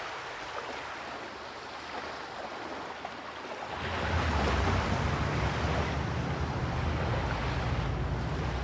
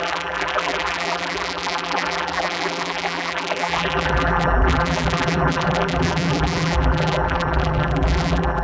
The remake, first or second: second